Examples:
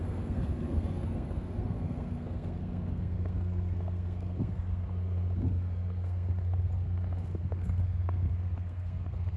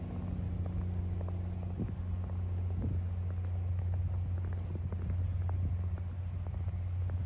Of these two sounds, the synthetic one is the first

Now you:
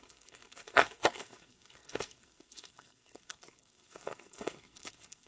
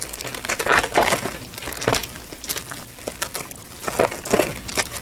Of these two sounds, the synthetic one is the first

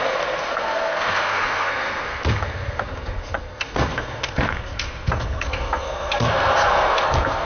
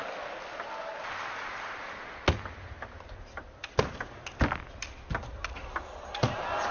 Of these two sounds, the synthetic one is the first